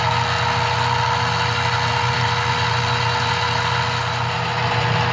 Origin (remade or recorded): recorded